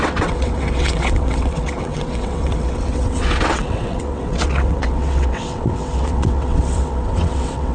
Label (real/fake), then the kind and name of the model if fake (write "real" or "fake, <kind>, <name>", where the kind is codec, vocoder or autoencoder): fake, vocoder, WaveNeXt